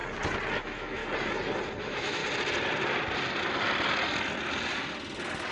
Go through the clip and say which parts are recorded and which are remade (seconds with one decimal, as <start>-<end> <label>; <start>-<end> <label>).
0.0-0.6 recorded; 0.6-1.0 remade; 1.0-1.8 recorded; 1.8-2.2 remade; 2.2-5.5 recorded